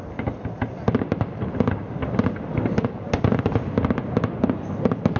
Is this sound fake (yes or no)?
no